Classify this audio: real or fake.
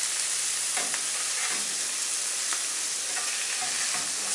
real